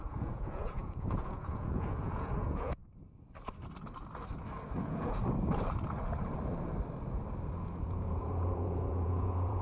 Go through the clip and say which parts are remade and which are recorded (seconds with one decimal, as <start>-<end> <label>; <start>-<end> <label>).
0.0-2.8 remade; 2.8-4.8 recorded; 4.8-5.2 remade; 5.2-7.6 recorded; 7.6-9.6 remade